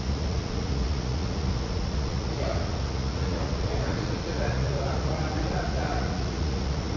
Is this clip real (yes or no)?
no